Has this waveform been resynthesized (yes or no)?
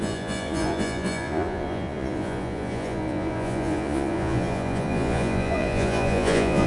yes